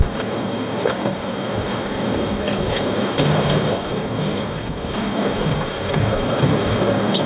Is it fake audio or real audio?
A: fake